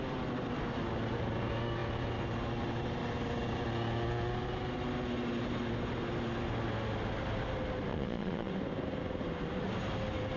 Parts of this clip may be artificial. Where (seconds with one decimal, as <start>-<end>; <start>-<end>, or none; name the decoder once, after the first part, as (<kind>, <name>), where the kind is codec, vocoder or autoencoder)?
7.9-8.5 (vocoder, Vocos)